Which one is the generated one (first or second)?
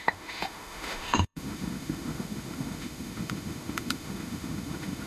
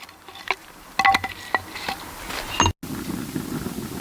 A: first